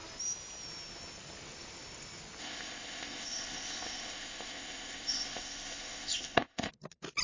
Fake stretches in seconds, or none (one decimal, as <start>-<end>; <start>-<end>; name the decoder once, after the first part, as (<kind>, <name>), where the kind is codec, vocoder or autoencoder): 2.4-6.7 (codec, ZipCodec)